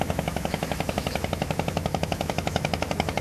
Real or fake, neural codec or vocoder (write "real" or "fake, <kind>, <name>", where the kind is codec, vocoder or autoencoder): fake, autoencoder, DAC-VAE